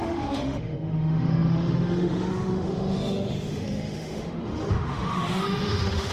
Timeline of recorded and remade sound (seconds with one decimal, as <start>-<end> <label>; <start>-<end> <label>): 0.0-6.1 remade